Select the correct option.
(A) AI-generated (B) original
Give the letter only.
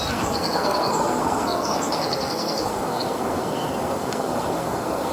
A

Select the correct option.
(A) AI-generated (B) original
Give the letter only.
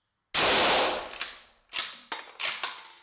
B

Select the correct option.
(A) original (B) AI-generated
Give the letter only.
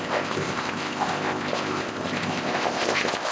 B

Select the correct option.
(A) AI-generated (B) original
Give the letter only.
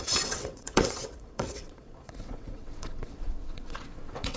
A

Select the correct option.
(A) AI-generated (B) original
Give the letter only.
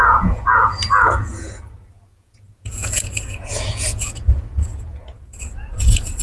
A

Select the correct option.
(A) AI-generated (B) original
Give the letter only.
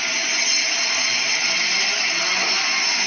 B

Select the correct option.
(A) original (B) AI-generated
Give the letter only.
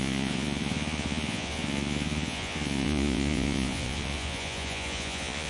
B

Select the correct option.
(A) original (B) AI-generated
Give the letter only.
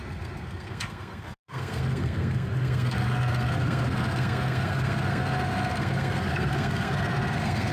B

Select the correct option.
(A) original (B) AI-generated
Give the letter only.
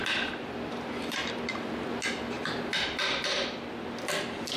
A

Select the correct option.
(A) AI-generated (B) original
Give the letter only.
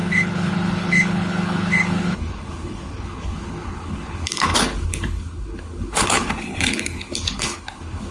A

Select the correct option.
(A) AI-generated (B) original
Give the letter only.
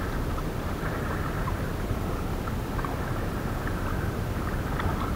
B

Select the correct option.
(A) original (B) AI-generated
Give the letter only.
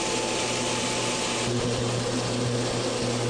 A